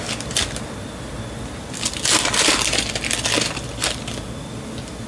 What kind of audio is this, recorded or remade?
recorded